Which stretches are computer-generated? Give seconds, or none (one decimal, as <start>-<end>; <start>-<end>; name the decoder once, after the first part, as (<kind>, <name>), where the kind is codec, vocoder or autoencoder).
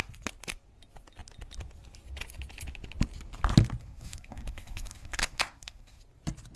3.8-6.0 (codec, SNAC)